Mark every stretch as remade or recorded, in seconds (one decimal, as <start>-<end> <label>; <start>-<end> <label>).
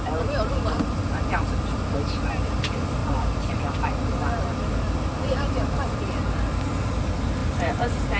0.0-8.2 recorded